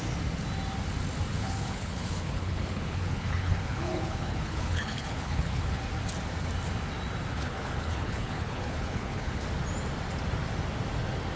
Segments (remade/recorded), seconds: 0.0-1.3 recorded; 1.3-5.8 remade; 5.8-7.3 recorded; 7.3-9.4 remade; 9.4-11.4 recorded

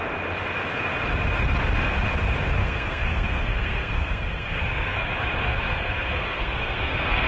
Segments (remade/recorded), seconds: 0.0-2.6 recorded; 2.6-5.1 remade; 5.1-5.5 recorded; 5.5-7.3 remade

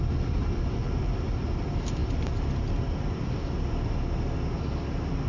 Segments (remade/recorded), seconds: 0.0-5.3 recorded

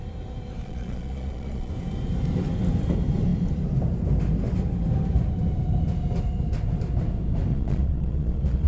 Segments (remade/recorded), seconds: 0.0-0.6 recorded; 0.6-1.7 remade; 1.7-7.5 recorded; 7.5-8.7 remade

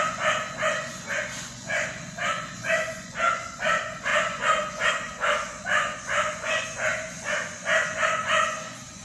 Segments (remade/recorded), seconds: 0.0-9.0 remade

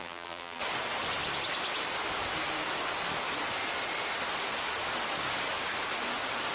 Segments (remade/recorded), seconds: 0.0-0.6 remade; 0.6-6.5 recorded